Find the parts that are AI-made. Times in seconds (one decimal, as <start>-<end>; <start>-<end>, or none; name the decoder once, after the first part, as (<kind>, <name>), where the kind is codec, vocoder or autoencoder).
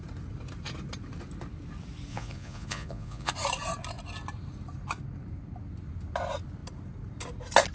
2.1-3.3 (vocoder, Vocos)